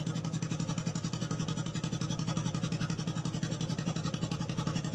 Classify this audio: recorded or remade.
recorded